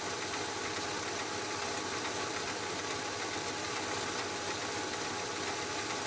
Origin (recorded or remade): remade